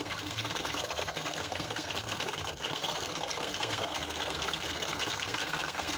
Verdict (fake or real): fake